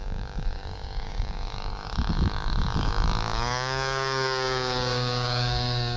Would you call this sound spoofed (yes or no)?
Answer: yes